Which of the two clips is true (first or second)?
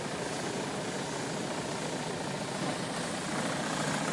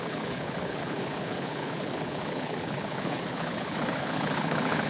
first